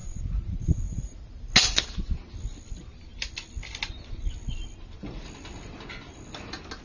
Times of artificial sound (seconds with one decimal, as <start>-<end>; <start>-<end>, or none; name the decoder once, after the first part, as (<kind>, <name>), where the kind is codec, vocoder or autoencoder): 0.0-1.2 (vocoder, Vocos)